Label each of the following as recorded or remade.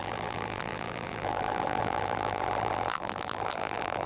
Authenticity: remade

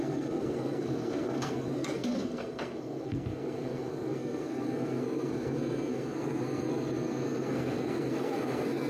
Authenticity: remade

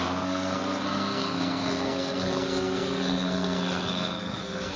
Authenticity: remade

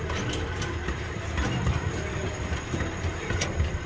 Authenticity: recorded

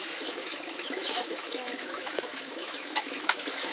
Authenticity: remade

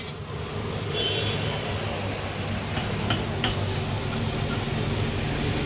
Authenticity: recorded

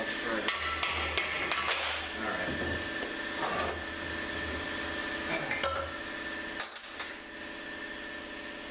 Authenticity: recorded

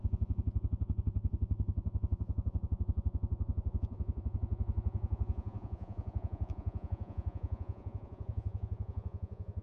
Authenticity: remade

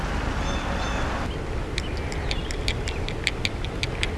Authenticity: recorded